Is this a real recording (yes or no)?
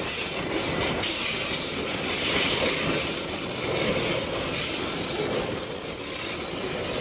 yes